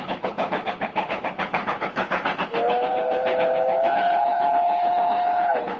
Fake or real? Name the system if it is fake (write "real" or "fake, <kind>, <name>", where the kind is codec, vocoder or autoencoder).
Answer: fake, codec, HILCodec